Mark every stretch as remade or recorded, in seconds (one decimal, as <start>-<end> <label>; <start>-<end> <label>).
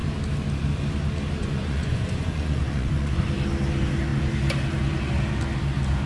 0.0-1.4 recorded; 1.4-3.2 remade; 3.2-6.1 recorded